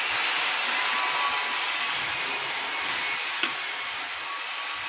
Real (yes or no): yes